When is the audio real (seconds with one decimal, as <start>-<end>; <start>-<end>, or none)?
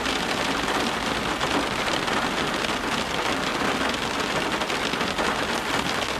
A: 0.0-6.2